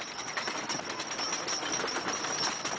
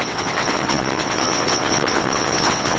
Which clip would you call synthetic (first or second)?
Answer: second